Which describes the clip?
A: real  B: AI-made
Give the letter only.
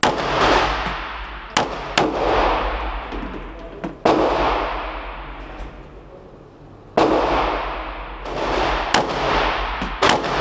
A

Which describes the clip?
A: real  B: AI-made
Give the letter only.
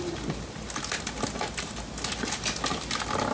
A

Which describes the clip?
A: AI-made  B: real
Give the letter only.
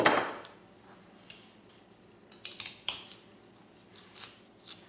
B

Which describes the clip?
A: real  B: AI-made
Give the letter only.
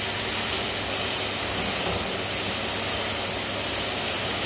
A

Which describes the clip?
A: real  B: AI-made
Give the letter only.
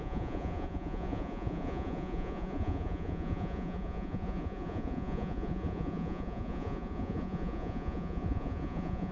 B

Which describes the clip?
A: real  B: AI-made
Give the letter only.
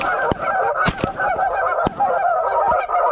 A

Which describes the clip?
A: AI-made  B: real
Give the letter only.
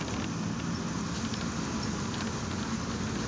B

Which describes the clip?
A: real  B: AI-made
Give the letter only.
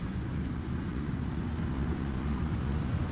B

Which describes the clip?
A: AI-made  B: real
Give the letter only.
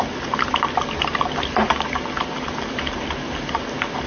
B